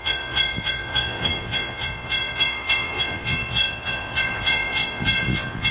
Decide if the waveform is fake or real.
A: fake